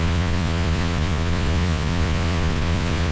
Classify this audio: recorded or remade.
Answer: remade